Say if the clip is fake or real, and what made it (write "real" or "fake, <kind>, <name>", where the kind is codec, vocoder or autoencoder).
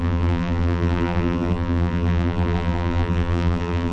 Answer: fake, vocoder, BigVGAN v2